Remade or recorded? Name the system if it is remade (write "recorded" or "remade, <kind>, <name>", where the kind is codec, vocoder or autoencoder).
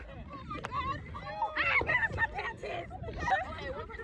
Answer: recorded